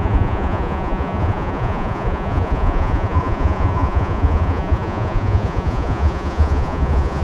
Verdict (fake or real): fake